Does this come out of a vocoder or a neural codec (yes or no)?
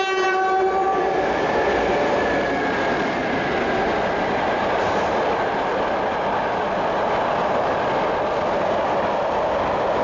no